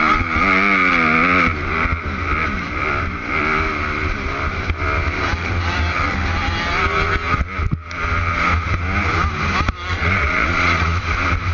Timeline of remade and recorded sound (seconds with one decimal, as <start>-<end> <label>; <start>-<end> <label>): 0.0-9.9 recorded; 9.9-11.0 remade; 11.0-11.5 recorded

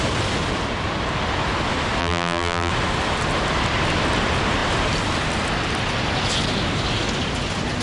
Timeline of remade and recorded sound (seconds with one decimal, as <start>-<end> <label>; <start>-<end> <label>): 0.0-2.0 recorded; 2.0-2.7 remade; 2.7-7.8 recorded

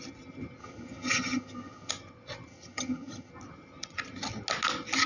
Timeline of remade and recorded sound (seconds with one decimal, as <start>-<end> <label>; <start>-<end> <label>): 0.0-0.6 recorded; 0.6-1.9 remade; 1.9-2.5 recorded; 2.5-3.3 remade; 3.3-5.1 recorded

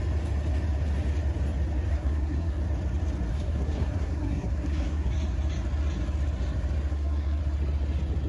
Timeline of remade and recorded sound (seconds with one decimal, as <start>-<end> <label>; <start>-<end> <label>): 0.0-1.9 recorded; 1.9-2.6 remade; 2.6-3.3 recorded; 3.3-5.1 remade; 5.1-6.9 recorded; 6.9-7.4 remade; 7.4-8.3 recorded

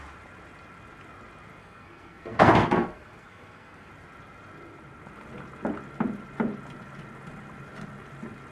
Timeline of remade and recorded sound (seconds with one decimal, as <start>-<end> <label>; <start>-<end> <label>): 0.0-1.6 recorded; 1.6-3.9 remade; 3.9-8.5 recorded